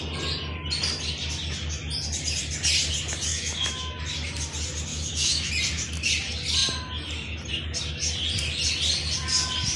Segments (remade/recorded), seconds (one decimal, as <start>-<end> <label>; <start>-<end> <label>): 0.0-3.3 recorded; 3.3-4.0 remade; 4.0-4.9 recorded; 4.9-5.5 remade; 5.5-9.8 recorded

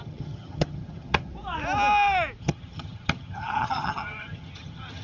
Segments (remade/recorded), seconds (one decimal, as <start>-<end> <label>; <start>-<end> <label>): 0.0-1.3 remade; 1.3-2.4 recorded; 2.4-5.0 remade

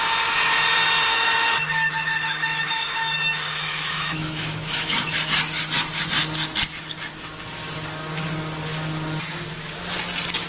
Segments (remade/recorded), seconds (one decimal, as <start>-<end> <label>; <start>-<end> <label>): 0.0-1.1 recorded; 1.1-5.1 remade; 5.1-10.5 recorded

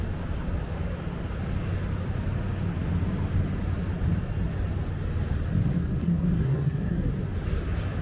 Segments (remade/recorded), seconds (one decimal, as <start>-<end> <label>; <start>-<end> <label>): 0.0-6.0 recorded; 6.0-7.1 remade; 7.1-8.0 recorded

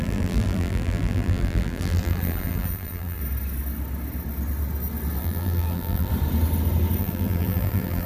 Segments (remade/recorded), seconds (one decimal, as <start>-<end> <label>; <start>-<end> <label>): 0.0-3.2 remade; 3.2-5.2 recorded; 5.2-6.1 remade; 6.1-7.0 recorded; 7.0-8.1 remade

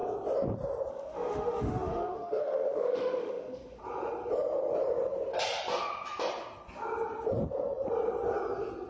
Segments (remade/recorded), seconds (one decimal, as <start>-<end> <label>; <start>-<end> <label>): 0.0-0.9 recorded; 0.9-3.8 remade; 3.8-8.9 recorded

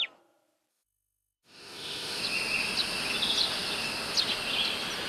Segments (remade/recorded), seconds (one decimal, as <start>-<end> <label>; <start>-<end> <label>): 0.0-0.7 recorded; 0.7-2.2 remade; 2.2-5.1 recorded

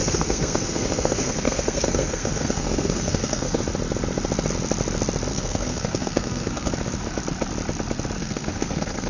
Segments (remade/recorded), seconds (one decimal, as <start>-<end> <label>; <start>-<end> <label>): 0.0-3.6 remade; 3.6-5.3 recorded; 5.3-6.7 remade; 6.7-8.2 recorded; 8.2-9.1 remade